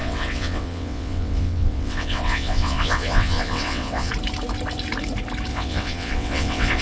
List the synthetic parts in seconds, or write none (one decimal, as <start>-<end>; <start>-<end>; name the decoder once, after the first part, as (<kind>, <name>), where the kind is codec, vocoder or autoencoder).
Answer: 0.0-4.1 (vocoder, WaveNeXt); 5.5-6.8